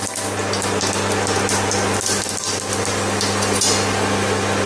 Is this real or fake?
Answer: real